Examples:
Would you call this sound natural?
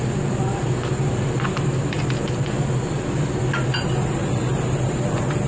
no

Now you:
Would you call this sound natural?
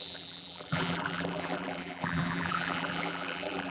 no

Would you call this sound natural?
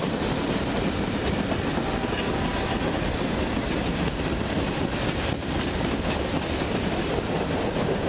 yes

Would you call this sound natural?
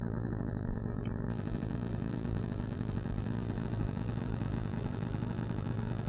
no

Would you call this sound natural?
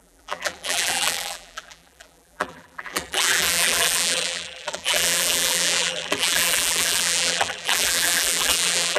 no